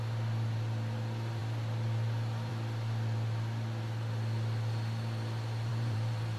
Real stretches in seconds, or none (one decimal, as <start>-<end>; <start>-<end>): 0.0-5.7

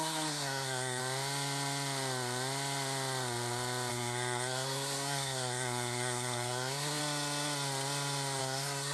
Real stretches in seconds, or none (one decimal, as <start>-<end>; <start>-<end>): 1.0-3.9; 7.0-8.4

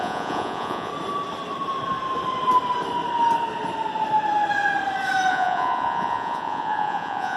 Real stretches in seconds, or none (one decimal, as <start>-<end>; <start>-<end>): 0.9-5.3

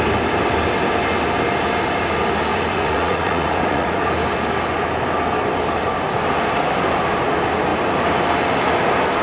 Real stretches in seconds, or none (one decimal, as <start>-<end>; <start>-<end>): 0.0-2.5; 4.0-9.2

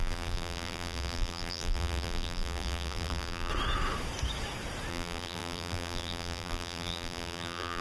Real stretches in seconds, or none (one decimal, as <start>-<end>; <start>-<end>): 3.5-4.9

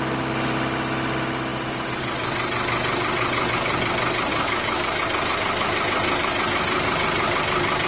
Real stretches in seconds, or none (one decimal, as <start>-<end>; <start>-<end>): 0.0-4.3; 5.0-7.9

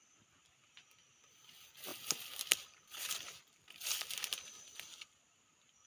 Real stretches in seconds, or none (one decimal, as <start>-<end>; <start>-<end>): 0.0-1.9; 4.4-5.9

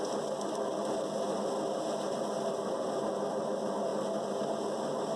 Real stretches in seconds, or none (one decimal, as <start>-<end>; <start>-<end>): 0.0-5.2